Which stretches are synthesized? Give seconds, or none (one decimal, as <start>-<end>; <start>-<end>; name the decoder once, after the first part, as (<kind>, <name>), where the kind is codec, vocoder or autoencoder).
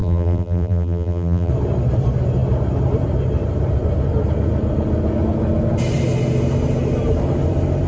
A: 0.0-1.5 (vocoder, BigVGAN v2)